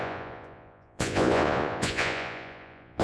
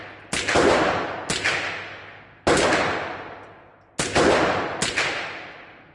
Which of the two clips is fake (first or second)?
first